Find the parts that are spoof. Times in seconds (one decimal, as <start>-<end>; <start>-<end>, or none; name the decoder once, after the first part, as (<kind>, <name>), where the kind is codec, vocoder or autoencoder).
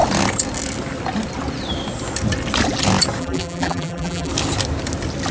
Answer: 3.2-4.3 (vocoder, BigVGAN v2)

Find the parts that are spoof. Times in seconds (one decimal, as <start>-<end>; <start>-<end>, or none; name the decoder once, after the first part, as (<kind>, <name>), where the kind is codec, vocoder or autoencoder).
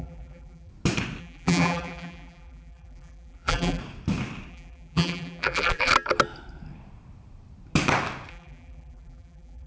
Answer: 0.0-0.7 (vocoder, BigVGAN v2); 1.2-3.8; 4.5-5.9; 8.3-9.7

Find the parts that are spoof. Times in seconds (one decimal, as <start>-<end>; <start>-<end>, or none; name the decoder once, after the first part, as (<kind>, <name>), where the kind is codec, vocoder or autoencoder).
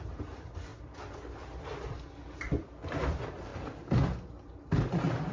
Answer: 0.0-0.7 (vocoder, BigVGAN v2); 3.1-3.5; 4.4-5.3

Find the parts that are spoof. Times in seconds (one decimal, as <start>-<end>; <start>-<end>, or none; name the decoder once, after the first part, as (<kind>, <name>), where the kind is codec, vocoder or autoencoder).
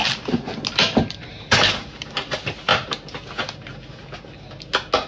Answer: 1.1-2.7 (vocoder, BigVGAN v2)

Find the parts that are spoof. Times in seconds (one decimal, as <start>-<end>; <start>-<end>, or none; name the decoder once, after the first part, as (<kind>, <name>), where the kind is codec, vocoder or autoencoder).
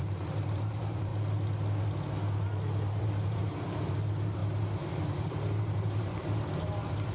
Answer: 0.0-1.1 (vocoder, BigVGAN v2); 3.0-4.4; 5.3-7.1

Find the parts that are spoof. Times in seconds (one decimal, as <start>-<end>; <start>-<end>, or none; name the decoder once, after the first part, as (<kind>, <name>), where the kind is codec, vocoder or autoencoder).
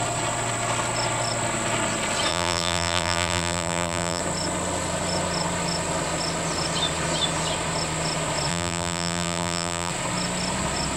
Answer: 2.3-4.2 (vocoder, BigVGAN v2); 8.5-9.9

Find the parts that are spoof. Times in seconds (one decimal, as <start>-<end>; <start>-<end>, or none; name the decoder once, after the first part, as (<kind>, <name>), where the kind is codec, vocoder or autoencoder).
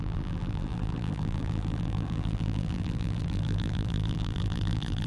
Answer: 0.0-5.1 (vocoder, BigVGAN v2)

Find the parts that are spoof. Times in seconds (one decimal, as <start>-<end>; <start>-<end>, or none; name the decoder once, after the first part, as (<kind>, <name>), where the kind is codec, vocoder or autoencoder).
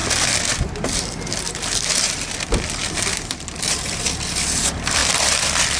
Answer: 1.4-5.0 (vocoder, BigVGAN v2)